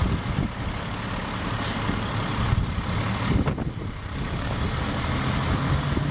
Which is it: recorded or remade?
recorded